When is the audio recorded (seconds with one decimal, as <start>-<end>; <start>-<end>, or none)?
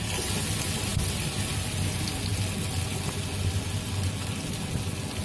0.0-5.2